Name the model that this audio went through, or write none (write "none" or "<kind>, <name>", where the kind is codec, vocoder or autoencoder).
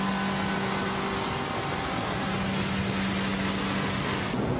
none